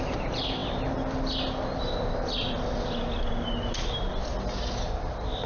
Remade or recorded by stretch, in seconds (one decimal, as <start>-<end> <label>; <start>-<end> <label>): 0.0-5.5 recorded